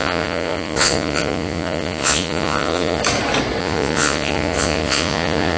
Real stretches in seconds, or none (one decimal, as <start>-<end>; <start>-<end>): 3.0-3.6